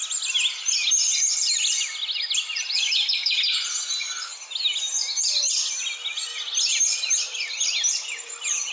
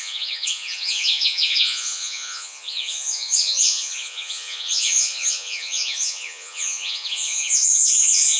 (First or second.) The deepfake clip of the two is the second